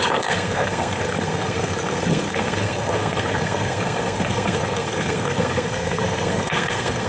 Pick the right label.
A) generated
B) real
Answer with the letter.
A